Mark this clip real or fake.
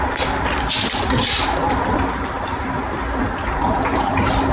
real